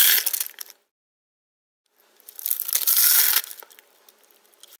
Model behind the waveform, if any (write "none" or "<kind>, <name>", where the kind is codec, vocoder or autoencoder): none